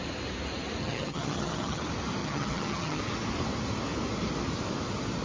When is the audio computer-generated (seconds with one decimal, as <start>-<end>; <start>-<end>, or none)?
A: 0.8-1.8; 2.2-3.0